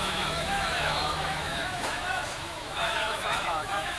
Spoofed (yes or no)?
yes